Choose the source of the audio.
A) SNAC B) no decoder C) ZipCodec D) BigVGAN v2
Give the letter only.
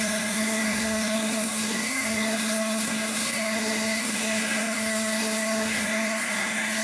A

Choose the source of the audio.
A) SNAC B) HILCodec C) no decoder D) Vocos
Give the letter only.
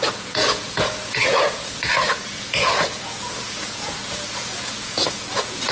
D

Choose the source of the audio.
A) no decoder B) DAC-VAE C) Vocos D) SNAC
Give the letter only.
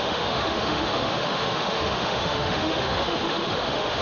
B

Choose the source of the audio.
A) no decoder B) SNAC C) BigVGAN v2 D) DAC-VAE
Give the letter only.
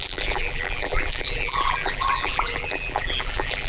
C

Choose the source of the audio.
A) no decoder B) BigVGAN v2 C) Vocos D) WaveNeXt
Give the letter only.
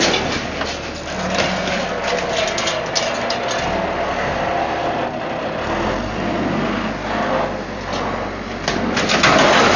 A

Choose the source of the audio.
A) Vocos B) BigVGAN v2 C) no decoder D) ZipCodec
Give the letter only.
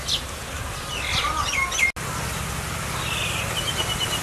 C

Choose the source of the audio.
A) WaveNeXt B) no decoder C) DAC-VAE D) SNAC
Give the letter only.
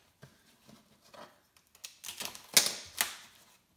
B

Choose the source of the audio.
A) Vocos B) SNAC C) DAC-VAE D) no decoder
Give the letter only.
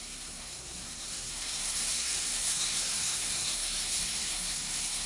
B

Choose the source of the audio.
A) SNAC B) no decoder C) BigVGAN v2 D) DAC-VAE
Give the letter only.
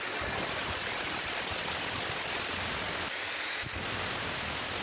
B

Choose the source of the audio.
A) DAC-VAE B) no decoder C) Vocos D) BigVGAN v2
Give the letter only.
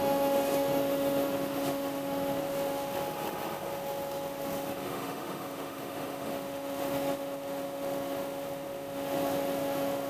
A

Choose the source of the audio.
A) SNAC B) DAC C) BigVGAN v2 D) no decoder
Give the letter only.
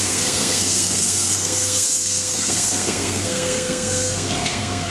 A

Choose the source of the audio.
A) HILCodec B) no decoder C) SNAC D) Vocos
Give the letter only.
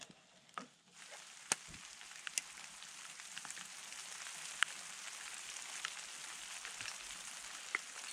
B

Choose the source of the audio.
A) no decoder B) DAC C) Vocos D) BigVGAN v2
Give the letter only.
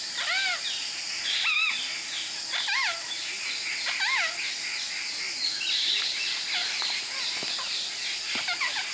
A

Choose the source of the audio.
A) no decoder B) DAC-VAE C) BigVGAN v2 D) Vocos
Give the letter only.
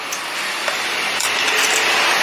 A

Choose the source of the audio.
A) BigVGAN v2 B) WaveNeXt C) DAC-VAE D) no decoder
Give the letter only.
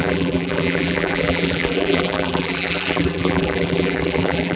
A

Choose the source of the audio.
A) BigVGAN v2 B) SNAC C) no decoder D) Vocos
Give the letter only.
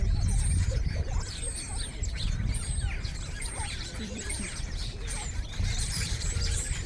A